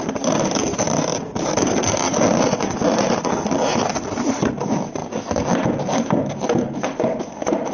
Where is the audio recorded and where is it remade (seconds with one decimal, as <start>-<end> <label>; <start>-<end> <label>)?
0.0-5.0 remade; 5.0-6.4 recorded; 6.4-7.7 remade

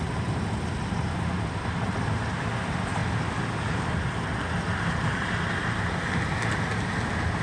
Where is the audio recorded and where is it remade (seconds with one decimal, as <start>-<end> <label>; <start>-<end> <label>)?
0.0-7.4 recorded

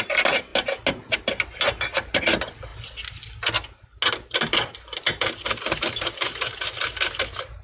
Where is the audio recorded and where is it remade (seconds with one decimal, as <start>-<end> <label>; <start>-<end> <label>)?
0.0-7.6 recorded

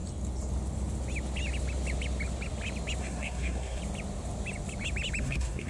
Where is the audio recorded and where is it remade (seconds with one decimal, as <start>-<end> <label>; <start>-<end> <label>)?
0.0-3.0 recorded; 3.0-3.8 remade; 3.8-5.2 recorded; 5.2-5.7 remade

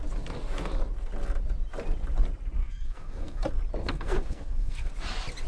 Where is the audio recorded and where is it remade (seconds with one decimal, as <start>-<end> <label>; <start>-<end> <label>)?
0.0-2.6 recorded; 2.6-3.4 remade; 3.4-3.8 recorded; 3.8-4.9 remade; 4.9-5.5 recorded

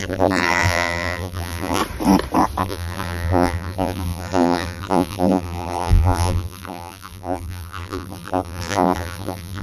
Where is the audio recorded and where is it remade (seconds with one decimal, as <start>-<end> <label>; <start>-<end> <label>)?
0.0-1.8 remade; 1.8-2.6 recorded; 2.6-9.6 remade

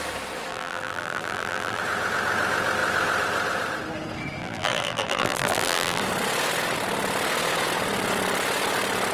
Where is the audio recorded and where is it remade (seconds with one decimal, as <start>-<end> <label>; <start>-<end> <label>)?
0.0-0.5 recorded; 0.5-1.8 remade; 1.8-4.4 recorded; 4.4-6.0 remade; 6.0-9.1 recorded

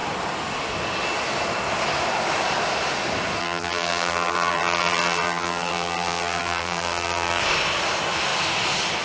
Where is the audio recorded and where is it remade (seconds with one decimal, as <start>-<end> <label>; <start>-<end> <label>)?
0.0-3.4 recorded; 3.4-7.4 remade; 7.4-9.0 recorded